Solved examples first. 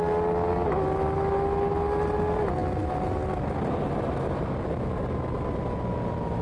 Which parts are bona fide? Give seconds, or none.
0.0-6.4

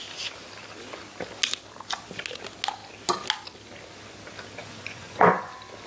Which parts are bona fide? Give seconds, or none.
0.0-4.6; 5.5-5.9